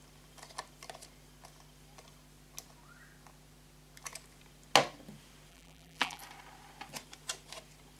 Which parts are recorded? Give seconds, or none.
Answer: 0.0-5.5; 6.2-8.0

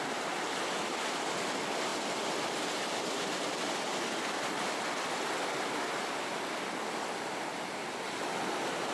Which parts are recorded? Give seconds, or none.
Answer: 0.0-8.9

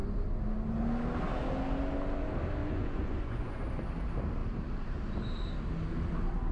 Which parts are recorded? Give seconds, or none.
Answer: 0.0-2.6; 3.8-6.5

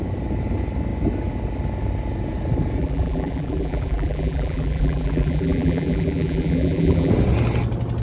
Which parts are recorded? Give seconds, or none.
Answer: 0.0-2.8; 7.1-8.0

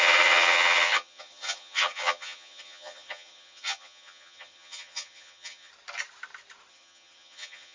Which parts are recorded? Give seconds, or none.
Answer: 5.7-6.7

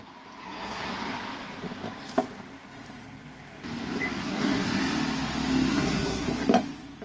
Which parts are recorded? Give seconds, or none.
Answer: 0.0-0.4; 0.9-4.2; 4.8-5.7; 6.3-7.0